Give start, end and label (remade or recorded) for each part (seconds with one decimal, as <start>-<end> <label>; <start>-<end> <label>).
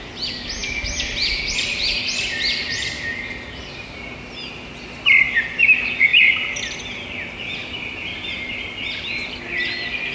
0.0-0.6 recorded; 0.6-2.0 remade; 2.0-6.1 recorded; 6.1-6.8 remade; 6.8-7.6 recorded; 7.6-9.1 remade; 9.1-10.1 recorded